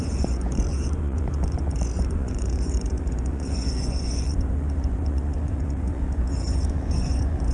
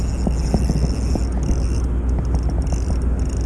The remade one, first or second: first